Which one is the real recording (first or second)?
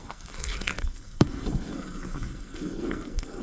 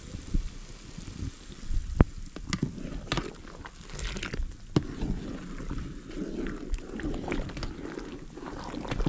second